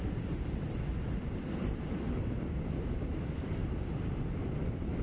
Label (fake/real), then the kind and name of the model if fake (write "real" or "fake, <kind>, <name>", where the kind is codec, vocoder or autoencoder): real